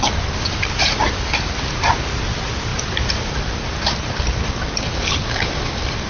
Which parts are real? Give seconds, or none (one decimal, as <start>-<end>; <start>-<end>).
0.0-6.1